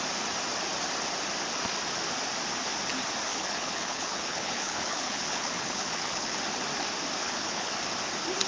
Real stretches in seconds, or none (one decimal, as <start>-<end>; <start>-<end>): 0.0-3.3; 6.4-7.2; 7.7-8.5